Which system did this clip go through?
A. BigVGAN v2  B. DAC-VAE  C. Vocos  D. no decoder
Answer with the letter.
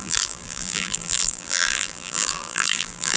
A